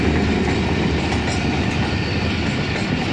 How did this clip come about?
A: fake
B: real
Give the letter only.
B